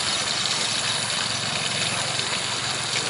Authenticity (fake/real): real